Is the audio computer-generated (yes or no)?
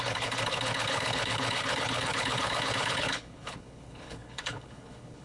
yes